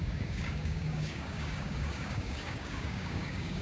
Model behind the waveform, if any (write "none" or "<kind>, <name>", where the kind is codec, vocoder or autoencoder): codec, DAC